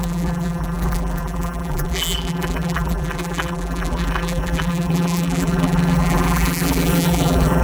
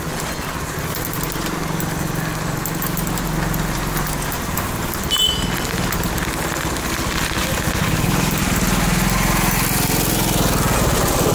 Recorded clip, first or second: second